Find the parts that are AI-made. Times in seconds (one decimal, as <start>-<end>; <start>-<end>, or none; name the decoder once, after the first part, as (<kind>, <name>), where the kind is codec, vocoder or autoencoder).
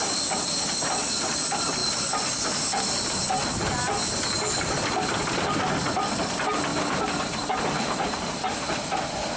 none